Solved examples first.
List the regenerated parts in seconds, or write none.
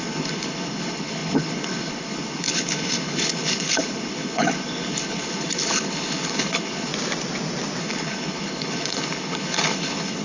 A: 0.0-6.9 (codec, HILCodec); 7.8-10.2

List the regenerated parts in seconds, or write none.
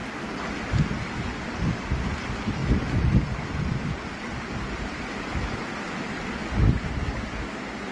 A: none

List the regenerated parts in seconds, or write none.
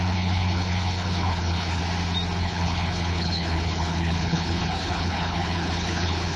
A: 0.0-1.8 (codec, HILCodec); 2.4-6.4